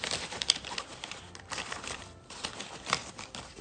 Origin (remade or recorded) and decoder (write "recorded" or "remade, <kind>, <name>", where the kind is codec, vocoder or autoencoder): remade, vocoder, BigVGAN v2